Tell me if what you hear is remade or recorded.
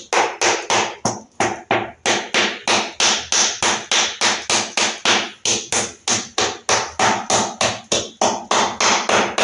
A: recorded